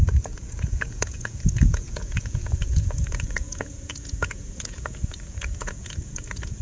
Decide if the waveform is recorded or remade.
remade